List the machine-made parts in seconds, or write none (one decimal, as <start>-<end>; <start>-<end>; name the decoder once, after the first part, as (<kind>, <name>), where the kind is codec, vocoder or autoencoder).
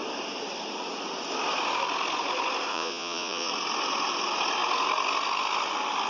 2.7-3.5 (vocoder, Vocos)